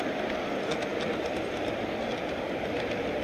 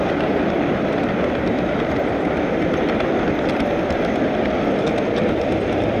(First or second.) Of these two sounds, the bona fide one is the first